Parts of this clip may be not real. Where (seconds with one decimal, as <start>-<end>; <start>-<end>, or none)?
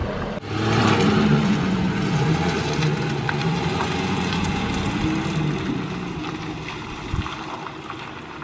1.3-5.0